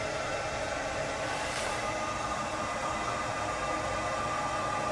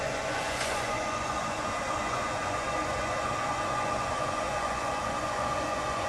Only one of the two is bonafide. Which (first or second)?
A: first